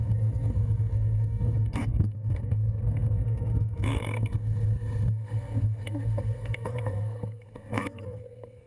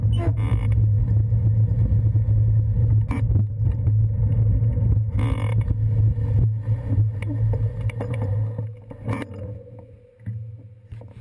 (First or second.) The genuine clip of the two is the second